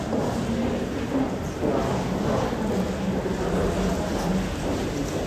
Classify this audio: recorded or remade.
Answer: recorded